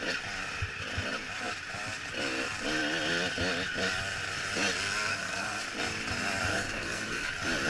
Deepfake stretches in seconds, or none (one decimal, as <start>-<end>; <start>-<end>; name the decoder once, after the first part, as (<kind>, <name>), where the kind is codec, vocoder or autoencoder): 5.1-5.6 (codec, SNAC); 6.5-7.3